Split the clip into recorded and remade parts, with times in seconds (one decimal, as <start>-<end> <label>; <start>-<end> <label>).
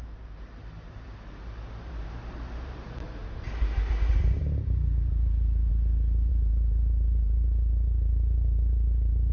0.0-3.2 remade; 3.2-4.4 recorded; 4.4-5.7 remade; 5.7-6.3 recorded; 6.3-9.3 remade